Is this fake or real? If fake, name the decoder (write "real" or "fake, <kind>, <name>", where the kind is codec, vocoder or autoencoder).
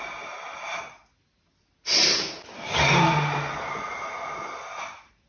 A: real